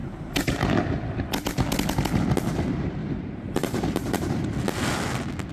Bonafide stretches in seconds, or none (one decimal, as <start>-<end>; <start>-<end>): 0.0-3.0; 4.2-5.5